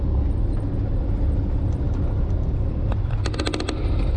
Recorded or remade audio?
recorded